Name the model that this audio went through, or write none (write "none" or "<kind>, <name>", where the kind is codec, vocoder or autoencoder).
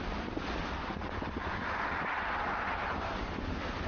none